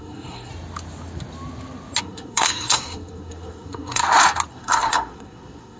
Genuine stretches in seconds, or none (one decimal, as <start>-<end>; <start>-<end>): 0.5-2.0; 4.0-4.5